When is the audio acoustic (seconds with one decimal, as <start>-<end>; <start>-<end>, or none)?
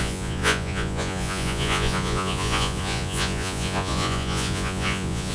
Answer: none